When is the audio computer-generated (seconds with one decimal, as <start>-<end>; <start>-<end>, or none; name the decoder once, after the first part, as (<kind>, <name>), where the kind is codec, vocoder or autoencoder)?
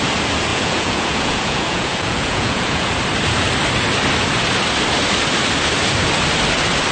0.5-2.9 (vocoder, Vocos)